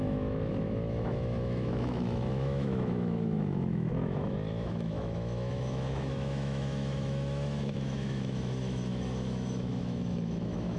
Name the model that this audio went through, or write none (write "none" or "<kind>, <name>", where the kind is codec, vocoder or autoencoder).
autoencoder, DAC-VAE